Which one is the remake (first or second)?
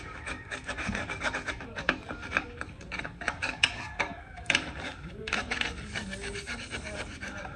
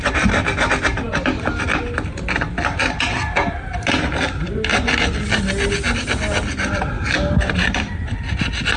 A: first